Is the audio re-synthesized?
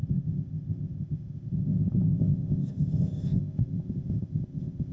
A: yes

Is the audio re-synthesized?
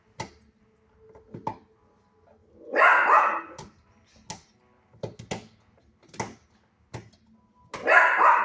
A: no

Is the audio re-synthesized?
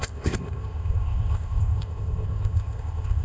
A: yes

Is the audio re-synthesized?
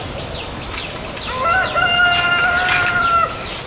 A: no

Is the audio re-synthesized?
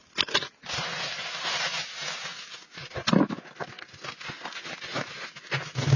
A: no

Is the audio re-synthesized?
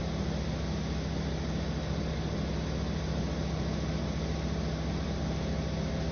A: no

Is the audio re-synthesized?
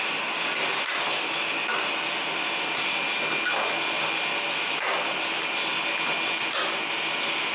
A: no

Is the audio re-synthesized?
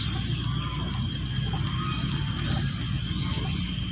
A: no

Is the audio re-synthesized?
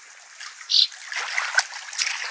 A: no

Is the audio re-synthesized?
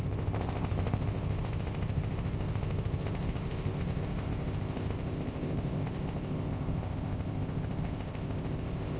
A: yes